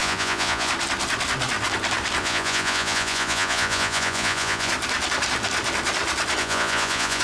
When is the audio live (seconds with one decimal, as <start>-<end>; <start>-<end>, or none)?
0.7-2.2; 4.7-6.4